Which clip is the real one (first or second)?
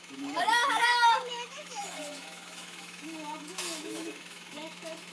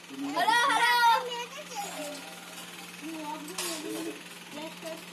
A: second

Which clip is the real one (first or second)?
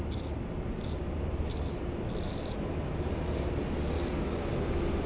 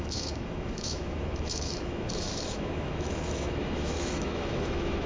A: first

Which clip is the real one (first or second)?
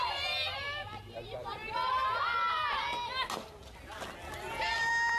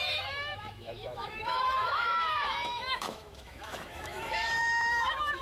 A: first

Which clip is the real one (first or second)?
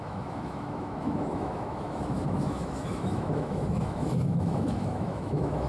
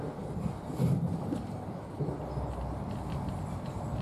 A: second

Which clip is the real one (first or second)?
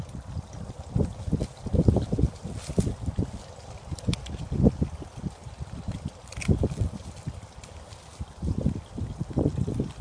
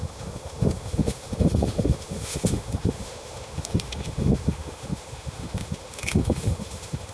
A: first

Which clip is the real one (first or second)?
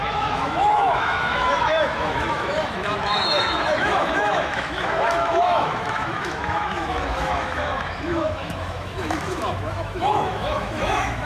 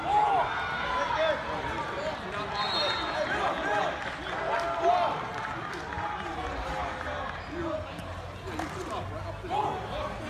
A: second